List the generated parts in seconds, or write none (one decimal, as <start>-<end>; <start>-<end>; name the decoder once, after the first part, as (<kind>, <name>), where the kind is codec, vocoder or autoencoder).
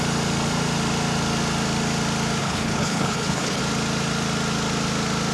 2.4-3.6 (codec, HILCodec)